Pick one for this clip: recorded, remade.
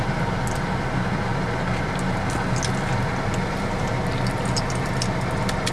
recorded